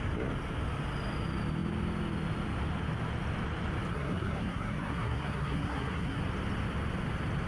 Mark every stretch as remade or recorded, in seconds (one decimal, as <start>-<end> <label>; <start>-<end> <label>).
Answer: 0.0-3.9 recorded; 3.9-6.2 remade; 6.2-7.5 recorded